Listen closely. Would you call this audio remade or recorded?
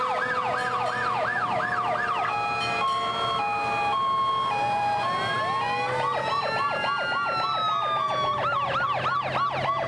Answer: recorded